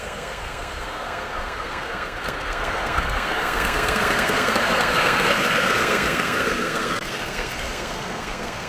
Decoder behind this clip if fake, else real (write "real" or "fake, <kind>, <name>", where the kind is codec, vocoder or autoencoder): fake, codec, SNAC